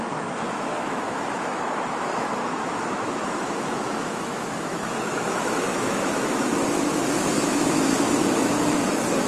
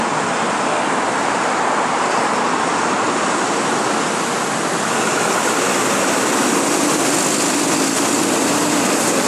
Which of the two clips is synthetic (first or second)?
first